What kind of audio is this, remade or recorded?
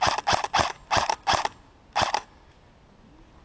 recorded